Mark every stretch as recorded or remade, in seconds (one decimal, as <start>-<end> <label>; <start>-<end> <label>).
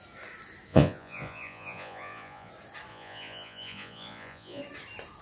0.0-0.7 recorded; 0.7-2.5 remade; 2.5-2.9 recorded; 2.9-4.6 remade; 4.6-5.2 recorded